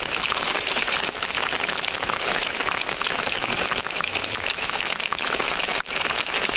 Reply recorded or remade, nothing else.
remade